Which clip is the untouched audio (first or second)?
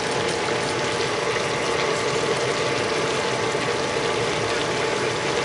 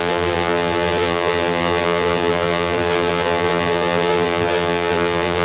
first